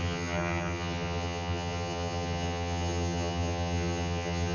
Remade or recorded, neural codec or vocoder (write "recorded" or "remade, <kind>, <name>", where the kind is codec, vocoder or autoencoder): remade, vocoder, HiFi-GAN